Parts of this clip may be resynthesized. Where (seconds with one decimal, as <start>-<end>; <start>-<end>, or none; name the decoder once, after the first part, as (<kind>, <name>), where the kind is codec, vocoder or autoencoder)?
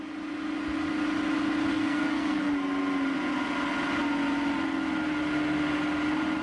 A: 1.7-2.4 (codec, SNAC)